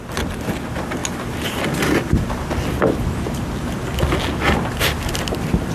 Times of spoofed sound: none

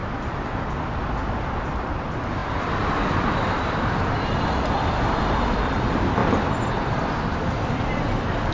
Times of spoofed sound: 1.8-6.2; 7.6-8.5

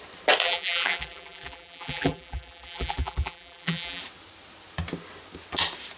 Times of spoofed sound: 0.4-4.0

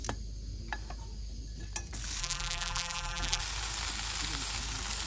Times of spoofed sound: 2.2-3.4

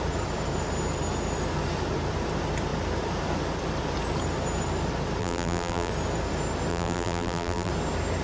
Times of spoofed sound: 5.2-5.9; 6.7-7.7

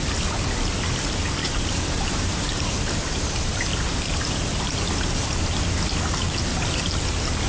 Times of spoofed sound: 1.4-2.5; 3.7-4.7; 6.5-7.0